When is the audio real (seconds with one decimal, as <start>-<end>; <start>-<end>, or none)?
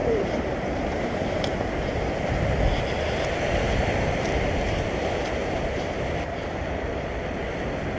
1.6-5.4; 5.9-8.0